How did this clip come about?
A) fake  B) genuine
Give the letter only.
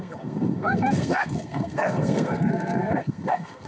A